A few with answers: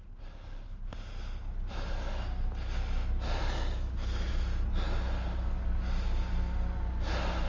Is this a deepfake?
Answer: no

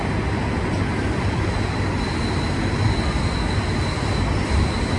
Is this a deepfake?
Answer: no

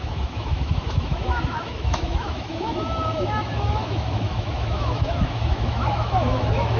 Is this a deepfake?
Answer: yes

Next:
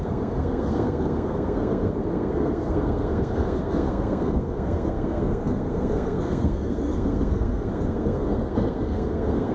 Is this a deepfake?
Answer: yes